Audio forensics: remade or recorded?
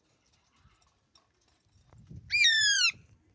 recorded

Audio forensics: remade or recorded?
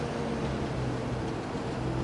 recorded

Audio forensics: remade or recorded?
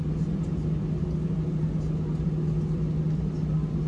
recorded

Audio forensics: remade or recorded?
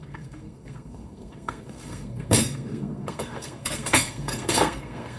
remade